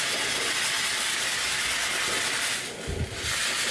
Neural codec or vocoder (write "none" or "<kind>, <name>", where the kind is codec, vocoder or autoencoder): none